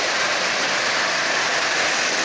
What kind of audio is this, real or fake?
real